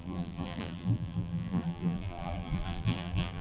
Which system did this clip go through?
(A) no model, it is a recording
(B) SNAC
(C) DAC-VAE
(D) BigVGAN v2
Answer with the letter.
D